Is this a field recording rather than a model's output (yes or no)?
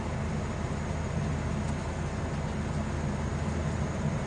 yes